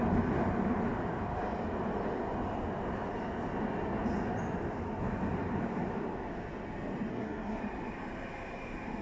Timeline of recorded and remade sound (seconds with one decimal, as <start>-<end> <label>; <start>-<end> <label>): 0.0-7.1 recorded; 7.1-7.6 remade; 7.6-9.0 recorded